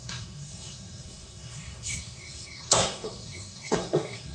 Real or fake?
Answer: fake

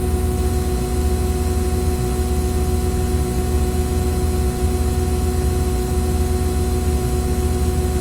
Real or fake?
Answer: real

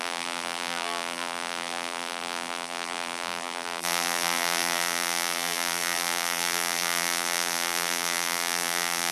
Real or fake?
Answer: fake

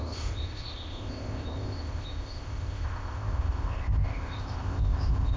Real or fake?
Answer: fake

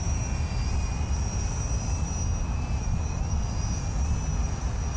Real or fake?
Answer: real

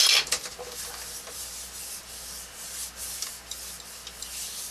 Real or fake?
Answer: real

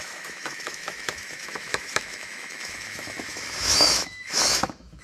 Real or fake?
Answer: fake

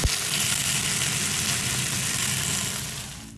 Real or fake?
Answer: real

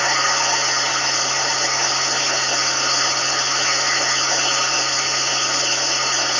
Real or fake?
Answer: real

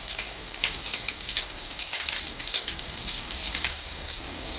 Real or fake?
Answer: fake